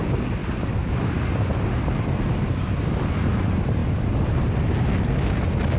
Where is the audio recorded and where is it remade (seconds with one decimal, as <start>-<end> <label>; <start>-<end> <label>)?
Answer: 0.0-3.8 recorded; 3.8-4.6 remade; 4.6-5.8 recorded